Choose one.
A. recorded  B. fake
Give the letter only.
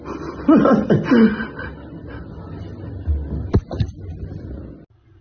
A